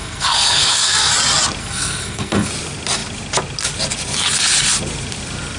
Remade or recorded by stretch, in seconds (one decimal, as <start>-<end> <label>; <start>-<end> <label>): 0.0-1.1 remade; 1.1-1.6 recorded; 1.6-2.5 remade; 2.5-5.6 recorded